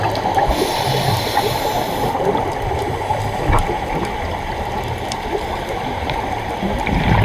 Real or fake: fake